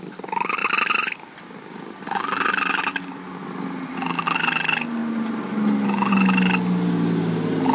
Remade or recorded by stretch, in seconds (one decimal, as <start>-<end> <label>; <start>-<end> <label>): 0.0-7.7 recorded